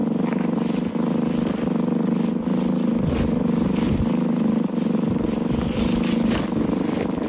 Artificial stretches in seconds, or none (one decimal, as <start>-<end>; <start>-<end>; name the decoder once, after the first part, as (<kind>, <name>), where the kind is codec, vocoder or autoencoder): none